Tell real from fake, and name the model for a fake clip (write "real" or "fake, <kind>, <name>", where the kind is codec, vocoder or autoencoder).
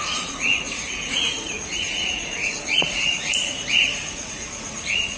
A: fake, vocoder, Vocos